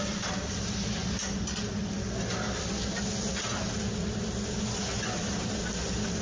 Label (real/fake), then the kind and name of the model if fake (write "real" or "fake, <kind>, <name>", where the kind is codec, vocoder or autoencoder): real